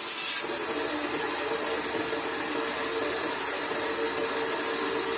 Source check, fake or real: real